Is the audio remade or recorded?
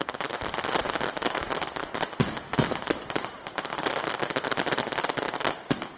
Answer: recorded